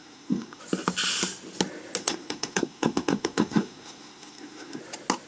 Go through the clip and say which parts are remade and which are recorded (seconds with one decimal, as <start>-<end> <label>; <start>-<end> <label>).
0.0-0.6 remade; 0.6-2.0 recorded; 2.0-4.8 remade; 4.8-5.3 recorded